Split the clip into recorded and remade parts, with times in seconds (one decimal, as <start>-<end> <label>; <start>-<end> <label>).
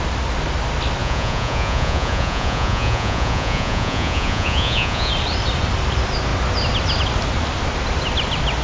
0.0-1.0 recorded; 1.0-5.1 remade; 5.1-8.6 recorded